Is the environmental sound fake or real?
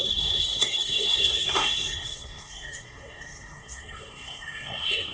fake